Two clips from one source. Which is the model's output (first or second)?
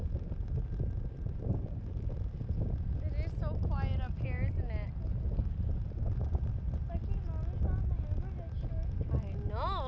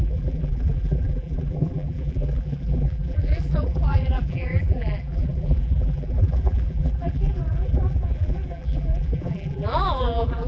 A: second